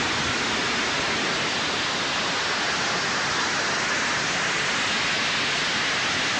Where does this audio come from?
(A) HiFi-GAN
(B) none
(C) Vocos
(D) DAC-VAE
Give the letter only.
B